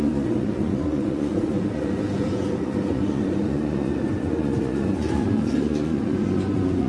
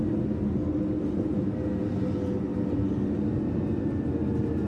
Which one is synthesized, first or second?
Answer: first